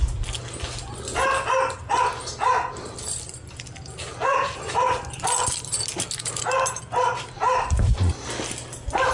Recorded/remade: recorded